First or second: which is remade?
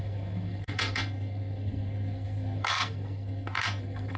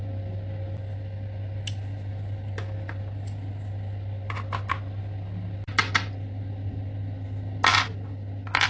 first